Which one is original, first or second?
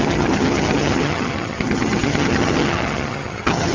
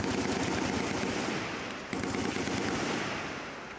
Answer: second